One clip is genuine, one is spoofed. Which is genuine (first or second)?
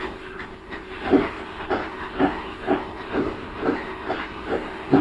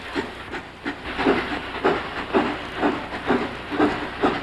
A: second